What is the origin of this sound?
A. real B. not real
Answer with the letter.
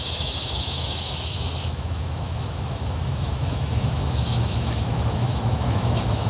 B